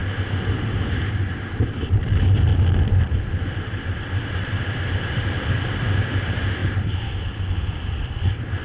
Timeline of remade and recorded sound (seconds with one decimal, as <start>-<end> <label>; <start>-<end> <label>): 0.0-1.6 recorded; 1.6-2.5 remade; 2.5-3.0 recorded; 3.0-6.6 remade; 6.6-7.9 recorded; 7.9-8.6 remade